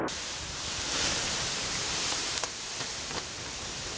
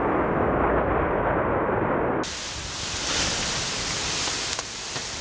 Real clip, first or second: second